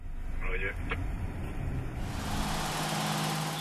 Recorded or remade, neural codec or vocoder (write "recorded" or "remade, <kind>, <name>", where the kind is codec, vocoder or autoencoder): recorded